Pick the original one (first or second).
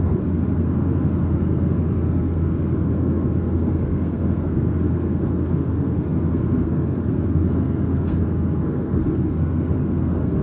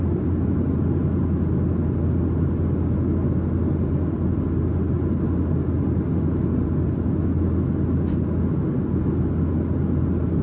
second